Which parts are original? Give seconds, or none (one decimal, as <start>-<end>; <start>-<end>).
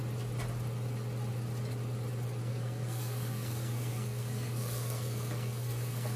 0.0-2.4